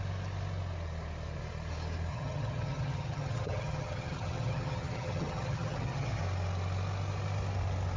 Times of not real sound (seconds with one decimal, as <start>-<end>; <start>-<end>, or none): 2.1-6.2